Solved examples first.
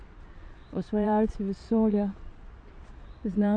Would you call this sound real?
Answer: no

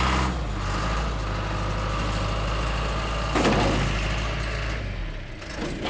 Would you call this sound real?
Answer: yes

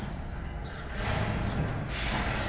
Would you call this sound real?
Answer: yes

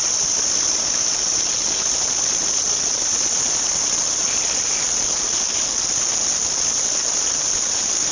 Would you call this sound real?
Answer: yes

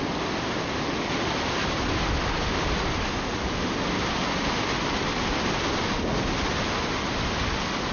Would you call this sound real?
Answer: yes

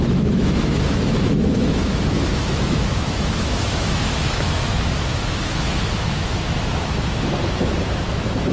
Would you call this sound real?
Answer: no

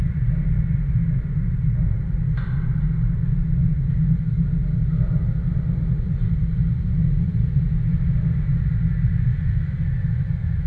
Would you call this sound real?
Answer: yes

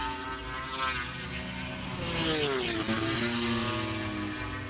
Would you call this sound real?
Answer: yes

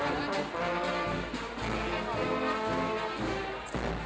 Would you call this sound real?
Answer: yes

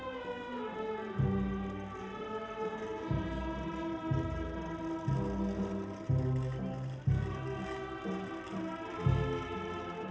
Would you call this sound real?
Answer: yes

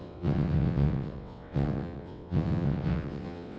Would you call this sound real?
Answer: no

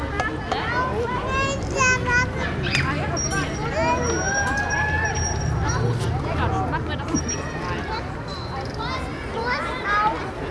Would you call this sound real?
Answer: yes